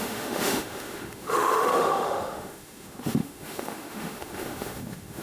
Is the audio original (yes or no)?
no